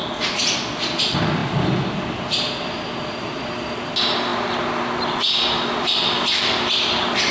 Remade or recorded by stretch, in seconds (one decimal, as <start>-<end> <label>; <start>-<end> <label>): 0.0-1.4 recorded; 1.4-3.5 remade; 3.5-7.3 recorded